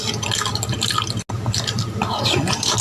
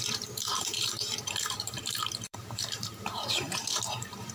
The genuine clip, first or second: first